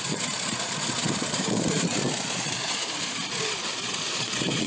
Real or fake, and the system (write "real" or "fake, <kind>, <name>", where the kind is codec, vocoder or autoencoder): fake, vocoder, Vocos